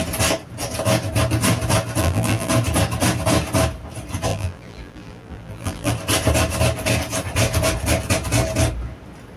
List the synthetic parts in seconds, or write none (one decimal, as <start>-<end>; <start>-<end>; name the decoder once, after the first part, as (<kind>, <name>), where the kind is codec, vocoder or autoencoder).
2.0-2.5 (vocoder, BigVGAN v2); 4.3-5.9